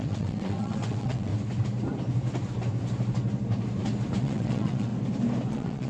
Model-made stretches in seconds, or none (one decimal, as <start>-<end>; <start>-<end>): 0.0-1.3; 4.2-4.9; 5.5-5.9